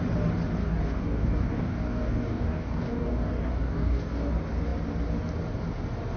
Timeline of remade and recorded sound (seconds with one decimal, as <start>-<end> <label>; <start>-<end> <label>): 0.0-0.6 recorded; 0.6-4.3 remade; 4.3-6.2 recorded